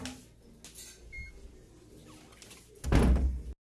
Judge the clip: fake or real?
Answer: real